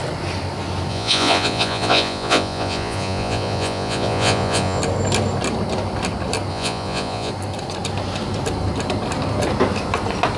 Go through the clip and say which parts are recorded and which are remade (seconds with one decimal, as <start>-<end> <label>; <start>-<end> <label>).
0.0-0.9 recorded; 0.9-4.8 remade; 4.8-6.5 recorded; 6.5-7.3 remade; 7.3-10.4 recorded